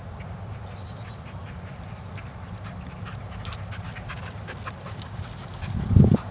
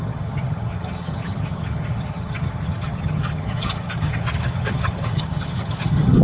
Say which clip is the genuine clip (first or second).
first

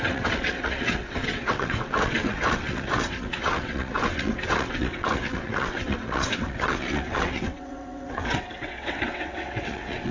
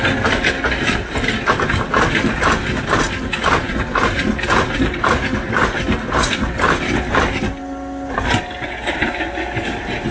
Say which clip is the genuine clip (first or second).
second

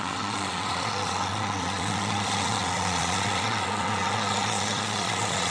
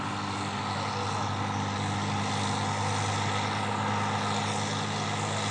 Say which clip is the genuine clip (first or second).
second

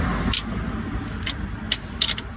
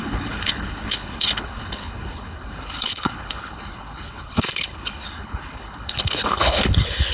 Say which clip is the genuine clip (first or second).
first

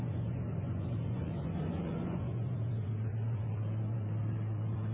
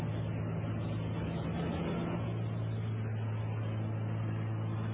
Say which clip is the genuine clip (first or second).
second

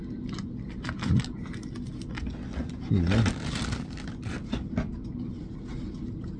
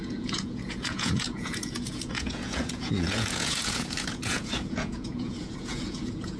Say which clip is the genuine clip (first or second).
first